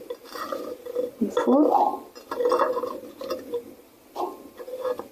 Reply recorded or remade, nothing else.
recorded